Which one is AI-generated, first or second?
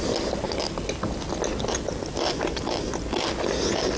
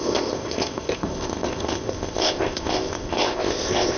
second